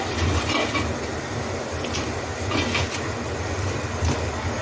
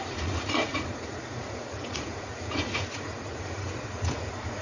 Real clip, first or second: first